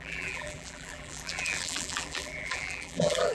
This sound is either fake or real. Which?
fake